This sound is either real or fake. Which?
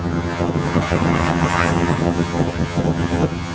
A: fake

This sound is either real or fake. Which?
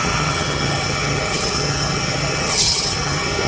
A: fake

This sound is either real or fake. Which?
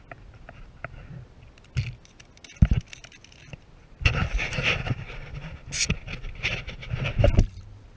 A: real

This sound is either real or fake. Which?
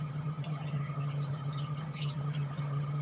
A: fake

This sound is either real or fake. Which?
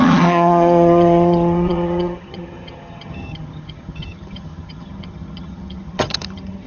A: fake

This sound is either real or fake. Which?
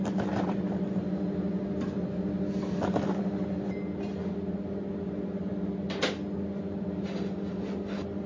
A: real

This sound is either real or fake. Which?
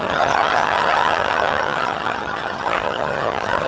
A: fake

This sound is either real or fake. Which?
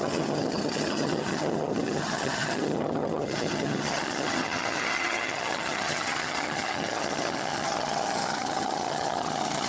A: fake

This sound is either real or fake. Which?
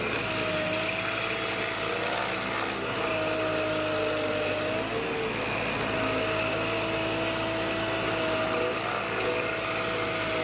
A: real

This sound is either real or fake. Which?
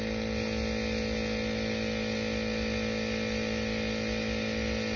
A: real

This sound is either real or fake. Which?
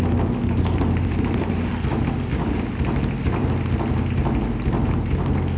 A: real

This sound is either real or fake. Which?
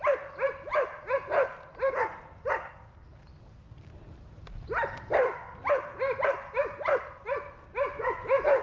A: real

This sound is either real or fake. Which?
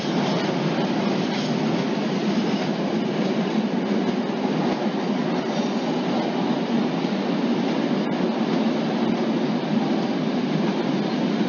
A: real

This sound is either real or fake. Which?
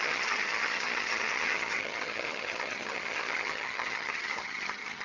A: fake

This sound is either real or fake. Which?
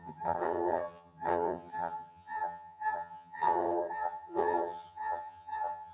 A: fake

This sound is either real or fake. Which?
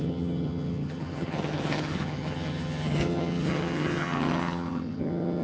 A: fake